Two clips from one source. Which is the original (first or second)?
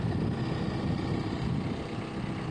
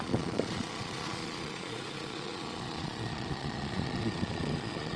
first